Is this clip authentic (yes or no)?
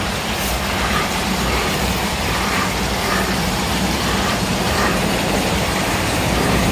no